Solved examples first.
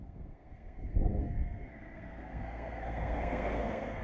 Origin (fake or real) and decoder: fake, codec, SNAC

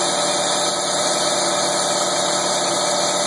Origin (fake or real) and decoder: real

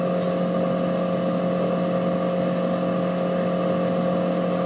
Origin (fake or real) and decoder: real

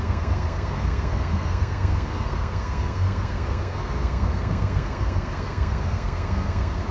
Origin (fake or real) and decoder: fake, codec, SNAC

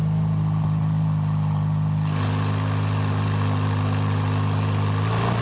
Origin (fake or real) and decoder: real